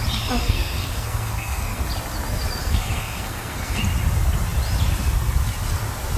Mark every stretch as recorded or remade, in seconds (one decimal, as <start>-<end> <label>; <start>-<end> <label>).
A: 0.0-0.4 recorded; 0.4-1.8 remade; 1.8-2.6 recorded; 2.6-3.8 remade; 3.8-6.2 recorded